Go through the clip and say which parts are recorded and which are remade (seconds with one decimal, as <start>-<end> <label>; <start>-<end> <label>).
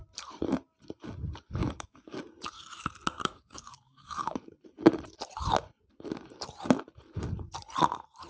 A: 0.0-1.6 recorded; 1.6-2.2 remade; 2.2-3.2 recorded; 3.2-4.5 remade; 4.5-8.3 recorded